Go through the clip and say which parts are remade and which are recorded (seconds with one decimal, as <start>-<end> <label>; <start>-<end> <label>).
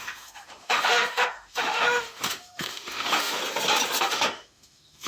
0.0-3.4 remade; 3.4-4.0 recorded; 4.0-5.1 remade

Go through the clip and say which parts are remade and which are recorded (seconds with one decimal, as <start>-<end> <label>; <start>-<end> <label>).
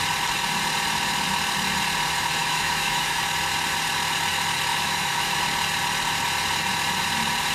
0.0-2.4 recorded; 2.4-3.2 remade; 3.2-4.7 recorded; 4.7-5.4 remade; 5.4-7.5 recorded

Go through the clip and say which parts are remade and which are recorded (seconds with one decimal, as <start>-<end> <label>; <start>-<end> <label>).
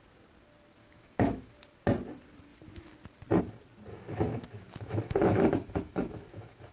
0.0-0.8 recorded; 0.8-1.5 remade; 1.5-3.9 recorded; 3.9-6.7 remade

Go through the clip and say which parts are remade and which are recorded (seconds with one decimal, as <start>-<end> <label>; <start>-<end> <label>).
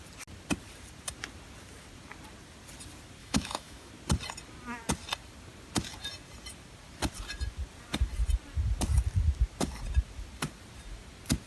0.0-3.2 recorded; 3.2-3.9 remade; 3.9-11.5 recorded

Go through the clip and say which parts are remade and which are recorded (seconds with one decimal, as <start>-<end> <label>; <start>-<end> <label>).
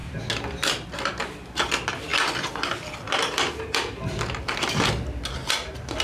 0.0-6.0 recorded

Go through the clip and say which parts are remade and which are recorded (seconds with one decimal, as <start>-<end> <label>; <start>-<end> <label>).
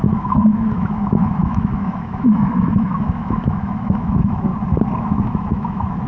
0.0-4.5 remade; 4.5-5.0 recorded; 5.0-6.1 remade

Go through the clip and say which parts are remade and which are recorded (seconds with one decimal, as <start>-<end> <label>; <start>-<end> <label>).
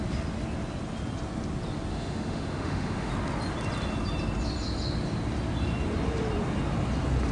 0.0-1.9 recorded; 1.9-3.1 remade; 3.1-7.3 recorded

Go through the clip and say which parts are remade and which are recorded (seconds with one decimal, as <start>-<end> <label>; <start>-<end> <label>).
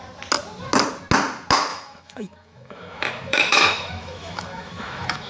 0.0-1.7 recorded; 1.7-5.3 remade